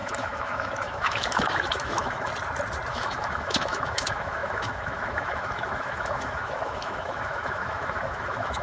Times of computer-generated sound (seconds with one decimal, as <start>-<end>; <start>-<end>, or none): 0.0-2.3; 2.9-8.6